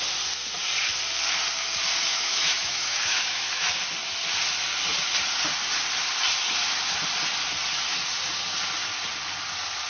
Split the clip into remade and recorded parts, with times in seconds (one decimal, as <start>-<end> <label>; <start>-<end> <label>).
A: 0.0-2.1 recorded; 2.1-3.6 remade; 3.6-9.9 recorded

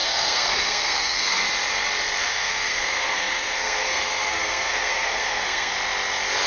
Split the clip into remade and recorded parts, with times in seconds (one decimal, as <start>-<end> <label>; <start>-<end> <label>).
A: 0.0-1.4 remade; 1.4-2.2 recorded; 2.2-5.7 remade; 5.7-6.5 recorded